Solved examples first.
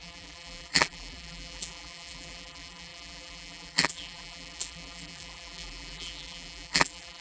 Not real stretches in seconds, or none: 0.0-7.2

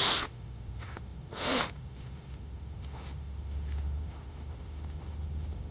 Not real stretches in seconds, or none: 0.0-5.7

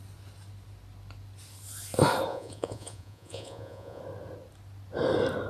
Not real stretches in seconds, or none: 2.3-4.0

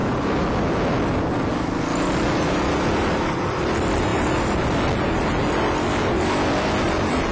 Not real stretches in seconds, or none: none

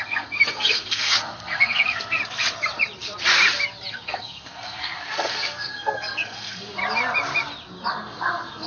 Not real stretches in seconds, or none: 0.0-2.2; 3.9-6.8; 7.9-8.7

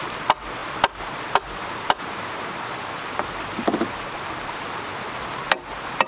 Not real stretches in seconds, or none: none